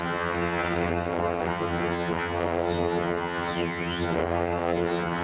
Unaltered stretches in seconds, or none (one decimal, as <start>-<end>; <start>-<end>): none